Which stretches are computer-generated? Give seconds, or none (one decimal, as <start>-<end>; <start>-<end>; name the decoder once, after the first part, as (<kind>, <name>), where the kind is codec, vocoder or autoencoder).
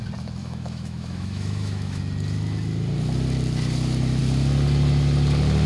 0.4-2.0 (autoencoder, DAC-VAE)